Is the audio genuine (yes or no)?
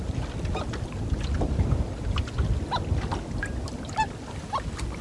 yes